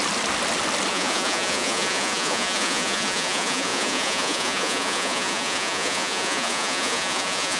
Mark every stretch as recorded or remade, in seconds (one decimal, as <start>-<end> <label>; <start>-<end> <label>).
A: 0.0-0.9 recorded; 0.9-7.6 remade